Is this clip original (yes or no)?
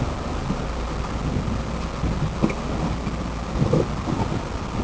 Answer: yes